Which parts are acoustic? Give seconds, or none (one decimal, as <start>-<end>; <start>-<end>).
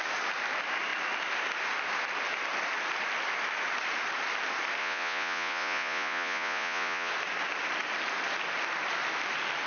0.0-4.8; 7.1-9.7